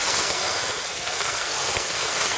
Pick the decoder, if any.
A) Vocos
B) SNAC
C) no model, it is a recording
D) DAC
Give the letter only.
B